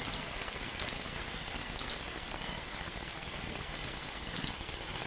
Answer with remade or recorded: remade